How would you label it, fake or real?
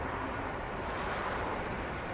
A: fake